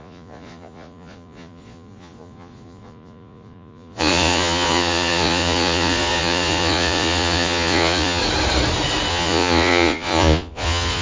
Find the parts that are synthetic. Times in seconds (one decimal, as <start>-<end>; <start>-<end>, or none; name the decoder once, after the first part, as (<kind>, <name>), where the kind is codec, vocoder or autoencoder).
0.0-8.2 (vocoder, Vocos); 9.1-11.0